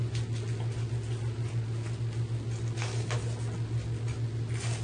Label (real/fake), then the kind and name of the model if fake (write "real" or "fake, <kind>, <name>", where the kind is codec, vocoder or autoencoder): real